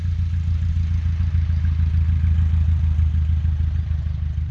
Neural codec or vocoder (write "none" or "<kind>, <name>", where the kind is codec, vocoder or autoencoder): none